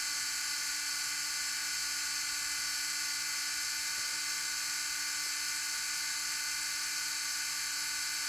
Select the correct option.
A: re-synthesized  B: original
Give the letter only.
B